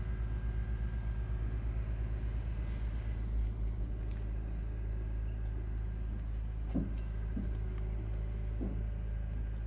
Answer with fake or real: real